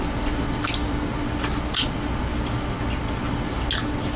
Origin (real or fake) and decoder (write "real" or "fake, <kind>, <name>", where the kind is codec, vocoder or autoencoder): real